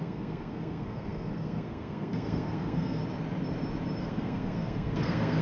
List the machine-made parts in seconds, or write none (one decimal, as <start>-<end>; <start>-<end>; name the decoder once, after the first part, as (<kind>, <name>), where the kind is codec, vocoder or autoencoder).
0.0-3.0 (codec, SNAC); 4.0-5.4